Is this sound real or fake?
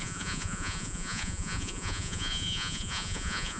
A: fake